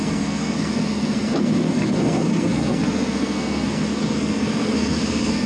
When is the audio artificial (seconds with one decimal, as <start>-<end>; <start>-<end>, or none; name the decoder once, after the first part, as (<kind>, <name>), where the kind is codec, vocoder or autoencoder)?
0.0-5.5 (codec, SNAC)